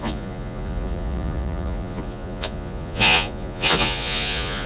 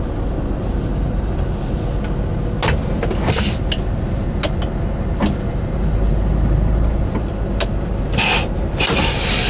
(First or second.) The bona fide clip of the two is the second